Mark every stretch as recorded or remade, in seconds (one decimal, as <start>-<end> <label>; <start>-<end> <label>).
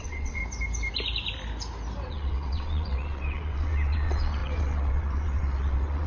0.0-0.4 remade; 0.4-2.1 recorded; 2.1-6.1 remade